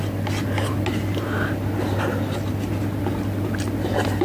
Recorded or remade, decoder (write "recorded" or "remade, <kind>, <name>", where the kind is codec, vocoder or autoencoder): recorded